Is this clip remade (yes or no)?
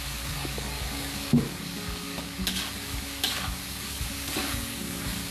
yes